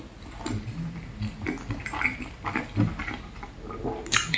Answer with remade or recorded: recorded